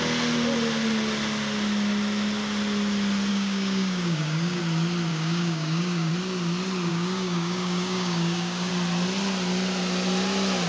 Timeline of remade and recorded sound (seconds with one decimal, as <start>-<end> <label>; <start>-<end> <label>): 0.0-3.3 recorded; 3.3-4.6 remade; 4.6-5.1 recorded; 5.1-6.1 remade; 6.1-6.9 recorded; 6.9-8.7 remade; 8.7-10.7 recorded